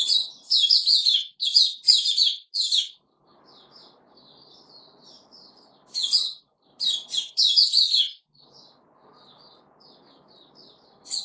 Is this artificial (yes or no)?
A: no